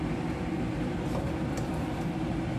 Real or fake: real